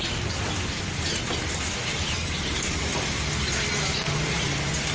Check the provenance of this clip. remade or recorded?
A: recorded